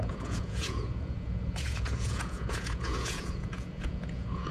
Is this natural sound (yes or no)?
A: no